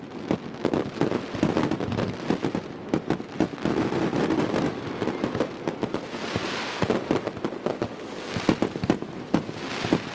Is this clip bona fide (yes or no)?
yes